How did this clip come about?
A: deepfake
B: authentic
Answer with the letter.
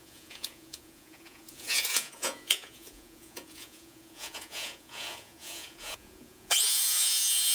A